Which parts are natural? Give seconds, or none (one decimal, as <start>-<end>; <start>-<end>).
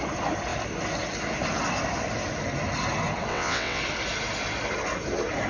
0.0-3.3; 3.8-5.5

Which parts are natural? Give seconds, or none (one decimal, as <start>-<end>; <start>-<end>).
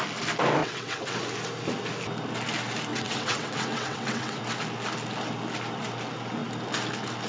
0.0-0.6; 1.1-2.9; 4.4-7.3